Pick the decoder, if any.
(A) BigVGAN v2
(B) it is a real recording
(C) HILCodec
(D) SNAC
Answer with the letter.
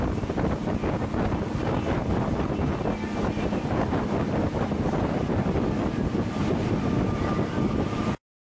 B